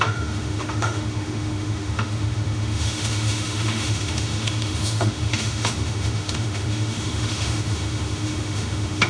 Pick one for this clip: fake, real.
fake